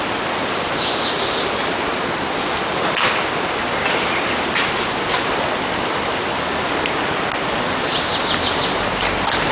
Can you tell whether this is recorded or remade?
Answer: recorded